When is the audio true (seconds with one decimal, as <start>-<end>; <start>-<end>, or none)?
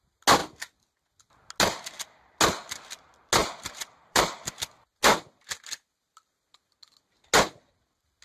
0.0-3.4; 4.5-8.2